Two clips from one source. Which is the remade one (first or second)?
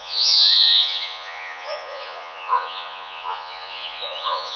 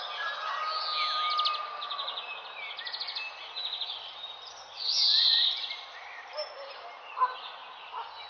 first